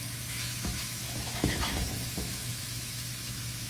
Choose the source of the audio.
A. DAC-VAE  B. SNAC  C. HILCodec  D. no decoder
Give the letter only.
A